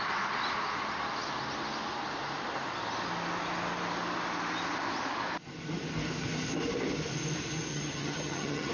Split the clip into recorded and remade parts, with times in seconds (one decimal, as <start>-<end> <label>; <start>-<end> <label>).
0.0-7.7 recorded; 7.7-8.7 remade